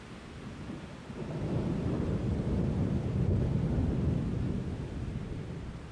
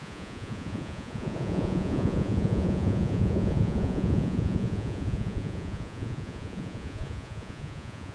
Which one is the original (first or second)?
first